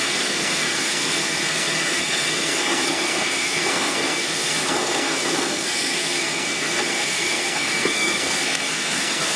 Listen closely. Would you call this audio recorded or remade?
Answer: remade